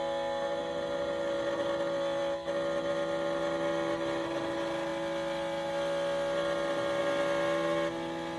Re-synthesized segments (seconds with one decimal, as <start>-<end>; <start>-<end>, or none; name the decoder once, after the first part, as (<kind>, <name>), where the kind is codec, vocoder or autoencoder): none

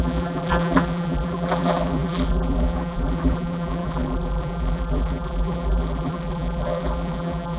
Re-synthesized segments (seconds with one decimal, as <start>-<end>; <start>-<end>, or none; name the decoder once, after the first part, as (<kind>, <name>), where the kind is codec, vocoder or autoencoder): 0.0-7.6 (vocoder, BigVGAN v2)

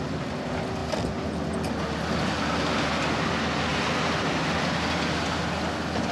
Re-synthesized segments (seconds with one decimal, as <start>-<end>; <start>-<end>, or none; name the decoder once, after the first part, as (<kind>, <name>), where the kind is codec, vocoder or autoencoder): 3.7-4.4 (vocoder, BigVGAN v2)

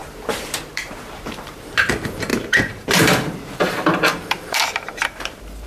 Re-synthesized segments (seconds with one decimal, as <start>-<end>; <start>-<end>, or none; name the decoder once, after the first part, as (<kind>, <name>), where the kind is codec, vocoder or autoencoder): 0.0-1.9 (vocoder, BigVGAN v2); 2.3-5.7

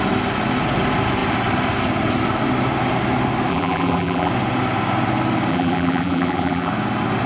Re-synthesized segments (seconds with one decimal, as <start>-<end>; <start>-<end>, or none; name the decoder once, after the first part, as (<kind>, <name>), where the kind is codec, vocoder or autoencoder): 3.5-4.3 (vocoder, BigVGAN v2); 5.5-6.7